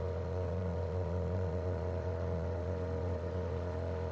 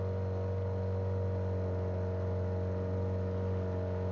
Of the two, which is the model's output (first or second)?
first